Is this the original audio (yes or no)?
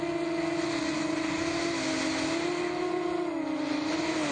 yes